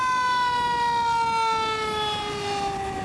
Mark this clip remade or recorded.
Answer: recorded